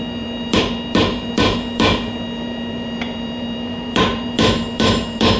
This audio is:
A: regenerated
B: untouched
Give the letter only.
A